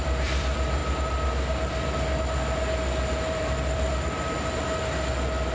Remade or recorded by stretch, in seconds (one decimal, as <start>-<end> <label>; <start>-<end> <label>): 0.0-0.8 remade; 0.8-3.2 recorded; 3.2-3.9 remade; 3.9-5.5 recorded